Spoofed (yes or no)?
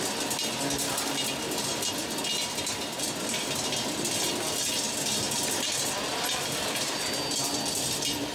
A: no